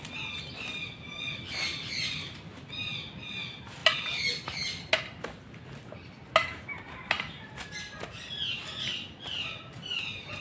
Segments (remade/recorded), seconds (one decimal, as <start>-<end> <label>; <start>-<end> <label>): 0.0-10.4 recorded

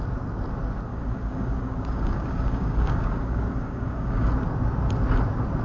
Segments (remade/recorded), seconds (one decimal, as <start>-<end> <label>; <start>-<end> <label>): 0.0-0.9 recorded; 0.9-4.3 remade; 4.3-5.6 recorded

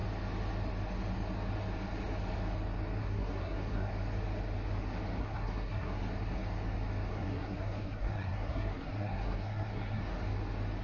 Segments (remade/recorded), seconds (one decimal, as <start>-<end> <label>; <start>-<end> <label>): 0.0-3.0 recorded; 3.0-3.9 remade; 3.9-5.2 recorded; 5.2-6.0 remade; 6.0-7.1 recorded; 7.1-10.0 remade; 10.0-10.8 recorded

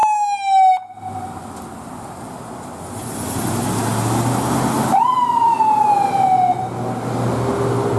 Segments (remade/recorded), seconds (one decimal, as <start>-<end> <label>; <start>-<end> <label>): 0.0-8.0 recorded

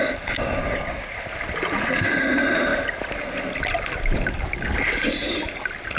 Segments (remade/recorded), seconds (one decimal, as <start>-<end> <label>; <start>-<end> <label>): 0.0-0.6 recorded; 0.6-1.1 remade; 1.1-6.0 recorded

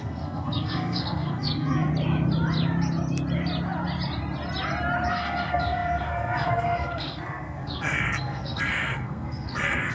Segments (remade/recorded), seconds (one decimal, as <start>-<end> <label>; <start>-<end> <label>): 0.0-1.9 remade; 1.9-5.1 recorded; 5.1-9.9 remade

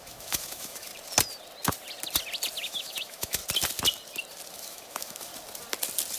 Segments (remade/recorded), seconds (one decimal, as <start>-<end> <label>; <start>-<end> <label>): 0.0-0.9 remade; 0.9-2.6 recorded; 2.6-3.4 remade; 3.4-4.5 recorded; 4.5-5.3 remade; 5.3-6.2 recorded